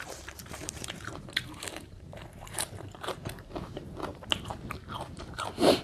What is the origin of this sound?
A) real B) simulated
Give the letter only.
B